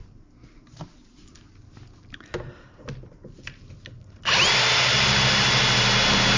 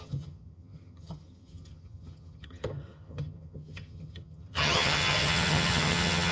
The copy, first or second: second